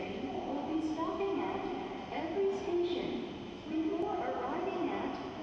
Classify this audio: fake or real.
real